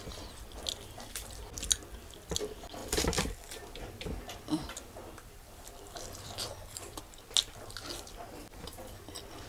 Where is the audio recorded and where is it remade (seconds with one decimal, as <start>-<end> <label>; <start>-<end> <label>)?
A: 0.0-2.8 recorded; 2.8-7.0 remade; 7.0-9.5 recorded